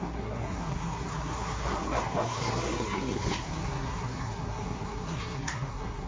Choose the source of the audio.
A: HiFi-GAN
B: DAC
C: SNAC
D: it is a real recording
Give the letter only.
C